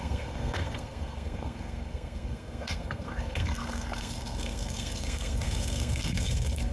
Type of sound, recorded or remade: remade